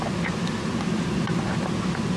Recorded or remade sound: recorded